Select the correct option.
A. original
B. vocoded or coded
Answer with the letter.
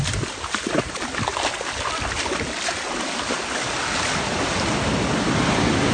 A